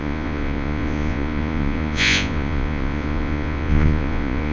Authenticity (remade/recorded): remade